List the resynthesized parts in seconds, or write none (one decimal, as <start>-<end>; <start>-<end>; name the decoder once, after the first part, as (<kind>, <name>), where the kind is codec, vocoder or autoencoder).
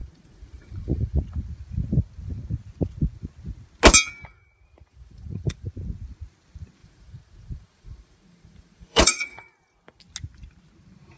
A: 0.0-1.2 (vocoder, Vocos); 4.3-5.7; 6.8-10.0